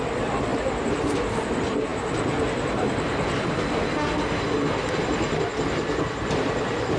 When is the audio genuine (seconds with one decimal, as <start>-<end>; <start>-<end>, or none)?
0.0-7.0